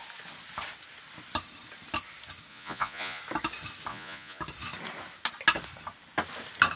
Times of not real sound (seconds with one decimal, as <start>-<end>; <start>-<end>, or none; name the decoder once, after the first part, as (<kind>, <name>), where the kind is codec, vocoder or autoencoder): 2.5-3.2 (vocoder, Vocos); 3.9-4.4